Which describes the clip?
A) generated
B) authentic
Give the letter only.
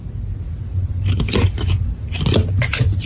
B